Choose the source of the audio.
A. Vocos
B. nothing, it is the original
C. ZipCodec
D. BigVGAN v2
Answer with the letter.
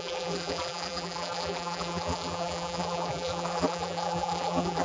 D